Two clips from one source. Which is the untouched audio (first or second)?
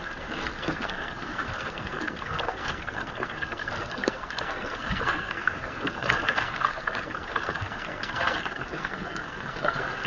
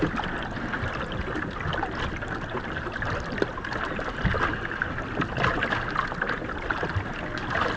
second